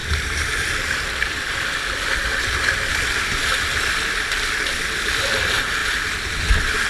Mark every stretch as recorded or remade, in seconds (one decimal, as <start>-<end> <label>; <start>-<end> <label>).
0.0-4.1 remade; 4.1-6.9 recorded